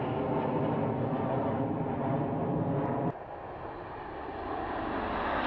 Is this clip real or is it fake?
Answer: real